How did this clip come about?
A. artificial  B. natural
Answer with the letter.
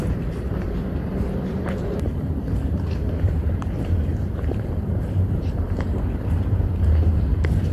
A